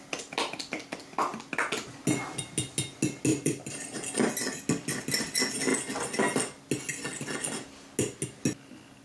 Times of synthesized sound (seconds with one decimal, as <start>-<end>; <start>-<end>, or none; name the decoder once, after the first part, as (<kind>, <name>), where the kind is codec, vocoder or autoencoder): 3.3-4.0 (vocoder, BigVGAN v2)